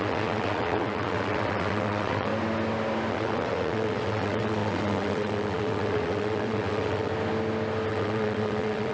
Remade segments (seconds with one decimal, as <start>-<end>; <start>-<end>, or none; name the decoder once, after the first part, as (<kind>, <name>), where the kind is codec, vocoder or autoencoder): 0.0-2.3 (vocoder, WaveNeXt); 3.1-7.1; 7.9-8.9